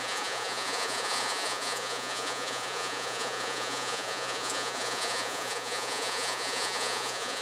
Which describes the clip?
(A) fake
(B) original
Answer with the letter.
A